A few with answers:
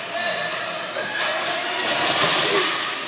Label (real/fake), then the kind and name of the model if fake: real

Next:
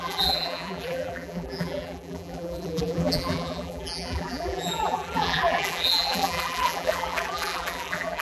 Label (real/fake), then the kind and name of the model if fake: fake, vocoder, BigVGAN v2